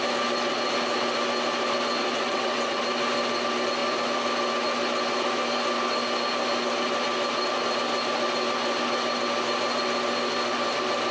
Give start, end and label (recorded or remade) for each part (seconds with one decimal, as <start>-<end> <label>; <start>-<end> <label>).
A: 0.0-2.1 recorded; 2.1-2.8 remade; 2.8-11.1 recorded

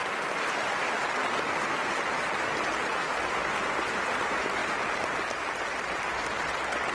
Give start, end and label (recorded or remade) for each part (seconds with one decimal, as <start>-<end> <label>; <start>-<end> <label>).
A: 0.0-6.9 recorded

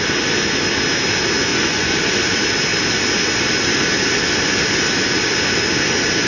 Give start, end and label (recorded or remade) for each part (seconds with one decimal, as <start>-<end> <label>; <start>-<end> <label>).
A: 0.0-1.5 recorded; 1.5-2.2 remade; 2.2-6.3 recorded

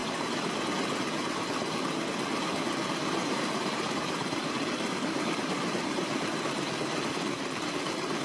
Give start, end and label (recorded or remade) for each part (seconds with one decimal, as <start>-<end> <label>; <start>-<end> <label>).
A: 0.0-0.6 remade; 0.6-3.2 recorded; 3.2-8.2 remade

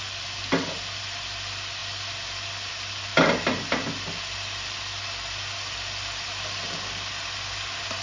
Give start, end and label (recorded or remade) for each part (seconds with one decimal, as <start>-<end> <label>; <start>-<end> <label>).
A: 0.0-8.0 recorded

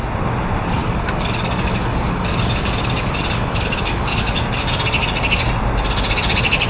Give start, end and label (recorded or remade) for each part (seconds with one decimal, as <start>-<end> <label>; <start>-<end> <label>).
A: 0.0-0.8 recorded; 0.8-4.4 remade; 4.4-6.7 recorded

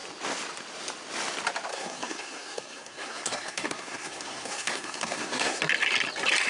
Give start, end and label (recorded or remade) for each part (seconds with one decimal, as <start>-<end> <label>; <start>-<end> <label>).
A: 0.0-1.7 recorded; 1.7-5.6 remade; 5.6-6.5 recorded

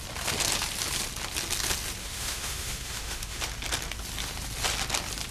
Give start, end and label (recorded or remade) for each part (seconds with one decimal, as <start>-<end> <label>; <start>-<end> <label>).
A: 0.0-2.0 recorded; 2.0-3.4 remade; 3.4-5.3 recorded